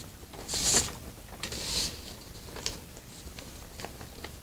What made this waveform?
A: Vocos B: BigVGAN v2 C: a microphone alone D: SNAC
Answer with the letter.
C